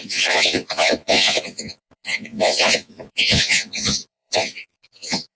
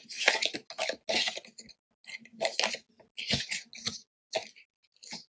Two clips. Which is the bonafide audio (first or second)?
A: second